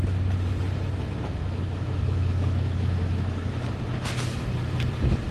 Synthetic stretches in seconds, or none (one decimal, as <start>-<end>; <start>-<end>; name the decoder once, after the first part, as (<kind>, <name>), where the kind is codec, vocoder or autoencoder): 1.4-3.7 (autoencoder, DAC-VAE)